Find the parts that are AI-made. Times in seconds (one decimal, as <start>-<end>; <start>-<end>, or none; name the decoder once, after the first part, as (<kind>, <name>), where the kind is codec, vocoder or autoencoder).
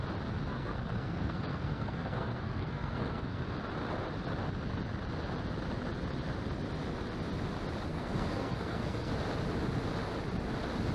0.5-3.4 (codec, SNAC); 7.9-9.1